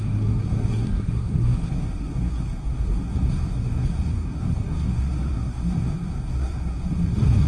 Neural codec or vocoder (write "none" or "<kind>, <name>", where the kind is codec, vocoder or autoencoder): codec, SNAC